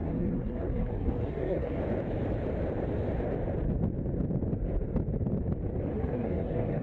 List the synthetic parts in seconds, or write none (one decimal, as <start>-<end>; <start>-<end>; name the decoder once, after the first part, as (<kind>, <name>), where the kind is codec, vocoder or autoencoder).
0.0-1.8 (codec, SNAC); 5.9-6.8